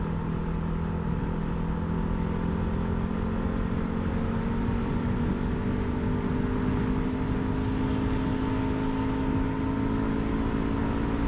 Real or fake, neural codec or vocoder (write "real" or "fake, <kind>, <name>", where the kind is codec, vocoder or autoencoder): real